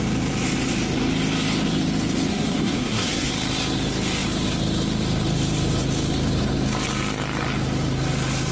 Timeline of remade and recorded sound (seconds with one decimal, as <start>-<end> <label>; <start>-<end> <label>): 0.0-2.3 recorded; 2.3-3.3 remade; 3.3-8.5 recorded

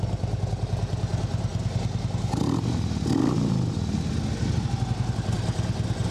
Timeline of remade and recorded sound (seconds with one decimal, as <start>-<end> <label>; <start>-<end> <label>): 0.0-6.1 recorded

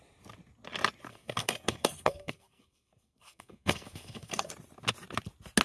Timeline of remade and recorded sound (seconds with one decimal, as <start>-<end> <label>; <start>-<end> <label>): 0.0-1.1 recorded; 1.1-4.5 remade; 4.5-5.6 recorded